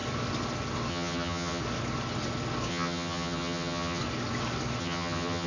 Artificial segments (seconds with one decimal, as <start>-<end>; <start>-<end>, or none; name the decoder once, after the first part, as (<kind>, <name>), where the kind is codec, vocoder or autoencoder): 0.9-1.6 (vocoder, HiFi-GAN); 2.7-4.0; 4.8-5.5